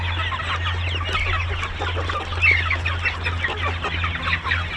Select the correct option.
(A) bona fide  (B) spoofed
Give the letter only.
A